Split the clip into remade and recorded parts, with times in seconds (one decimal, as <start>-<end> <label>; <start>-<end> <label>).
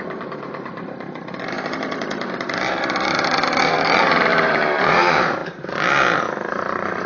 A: 0.0-5.4 remade; 5.4-6.5 recorded; 6.5-7.1 remade